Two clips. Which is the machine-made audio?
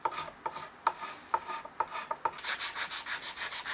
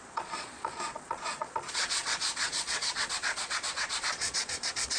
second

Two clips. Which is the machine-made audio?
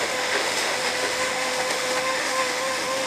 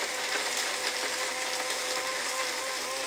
first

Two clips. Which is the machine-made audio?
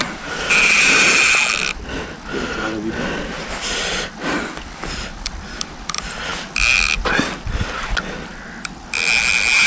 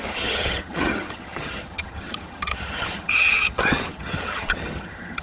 second